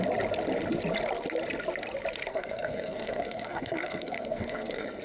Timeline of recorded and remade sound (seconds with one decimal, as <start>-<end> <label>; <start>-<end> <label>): 0.0-2.3 recorded; 2.3-5.0 remade